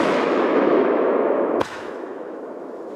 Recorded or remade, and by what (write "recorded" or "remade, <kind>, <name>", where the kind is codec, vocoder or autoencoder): remade, autoencoder, DAC-VAE